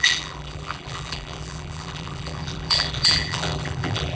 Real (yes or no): no